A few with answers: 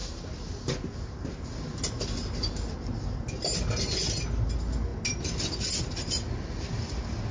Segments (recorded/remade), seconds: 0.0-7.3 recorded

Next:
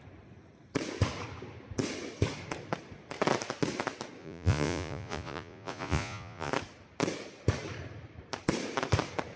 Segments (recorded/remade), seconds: 0.0-4.2 recorded; 4.2-6.5 remade; 6.5-9.4 recorded

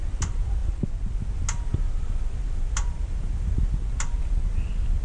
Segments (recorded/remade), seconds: 0.0-0.6 recorded; 0.6-1.1 remade; 1.1-1.7 recorded; 1.7-3.6 remade; 3.6-5.0 recorded

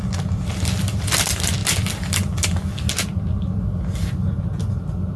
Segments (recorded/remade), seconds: 0.0-5.2 recorded